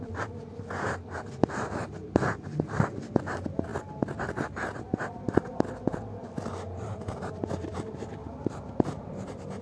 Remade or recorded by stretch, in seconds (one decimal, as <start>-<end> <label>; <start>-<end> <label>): 0.0-9.6 recorded

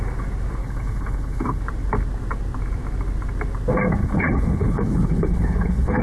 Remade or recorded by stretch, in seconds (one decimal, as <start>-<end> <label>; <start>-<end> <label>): 0.0-0.6 recorded; 0.6-1.6 remade; 1.6-4.0 recorded; 4.0-6.0 remade

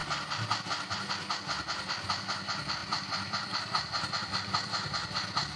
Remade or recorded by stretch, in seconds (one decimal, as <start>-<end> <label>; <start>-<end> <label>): 0.0-1.1 remade; 1.1-2.8 recorded; 2.8-5.6 remade

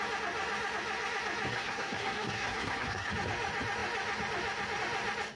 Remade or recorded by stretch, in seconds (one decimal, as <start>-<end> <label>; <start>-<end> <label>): 0.0-1.5 recorded; 1.5-3.1 remade; 3.1-5.4 recorded